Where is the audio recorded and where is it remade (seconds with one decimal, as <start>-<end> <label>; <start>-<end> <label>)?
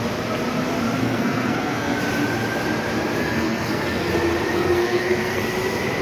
0.0-1.0 recorded; 1.0-2.0 remade; 2.0-3.2 recorded; 3.2-4.1 remade; 4.1-4.5 recorded; 4.5-5.4 remade; 5.4-6.0 recorded